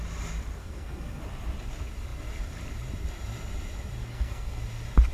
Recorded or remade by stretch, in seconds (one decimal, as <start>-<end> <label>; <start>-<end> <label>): 0.0-0.6 recorded; 0.6-1.2 remade; 1.2-4.0 recorded; 4.0-4.6 remade; 4.6-5.1 recorded